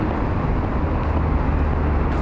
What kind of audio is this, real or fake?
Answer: real